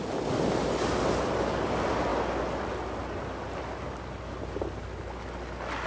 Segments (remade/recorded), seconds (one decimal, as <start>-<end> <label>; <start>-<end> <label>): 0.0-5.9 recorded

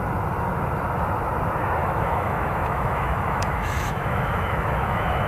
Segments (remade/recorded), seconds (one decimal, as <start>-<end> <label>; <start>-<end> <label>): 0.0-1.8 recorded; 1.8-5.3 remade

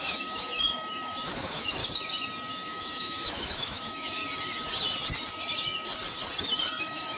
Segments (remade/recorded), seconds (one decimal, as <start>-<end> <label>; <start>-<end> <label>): 0.0-1.8 remade; 1.8-2.5 recorded; 2.5-4.2 remade; 4.2-6.8 recorded; 6.8-7.2 remade